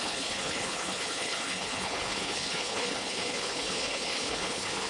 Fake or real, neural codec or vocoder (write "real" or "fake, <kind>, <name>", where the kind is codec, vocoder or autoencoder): fake, codec, HILCodec